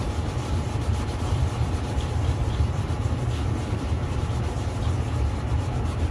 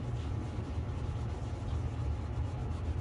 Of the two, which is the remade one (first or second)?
first